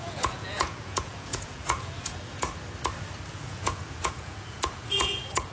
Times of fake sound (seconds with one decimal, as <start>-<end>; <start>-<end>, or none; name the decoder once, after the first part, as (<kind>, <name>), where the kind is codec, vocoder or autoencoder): 0.0-2.5 (vocoder, Vocos); 3.3-5.5